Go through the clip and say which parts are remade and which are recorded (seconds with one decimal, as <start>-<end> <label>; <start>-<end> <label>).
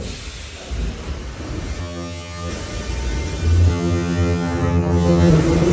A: 0.0-1.8 recorded; 1.8-2.5 remade; 2.5-3.7 recorded; 3.7-5.3 remade; 5.3-5.7 recorded